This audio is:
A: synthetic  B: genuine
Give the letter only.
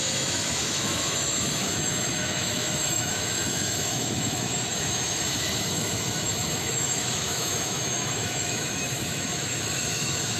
A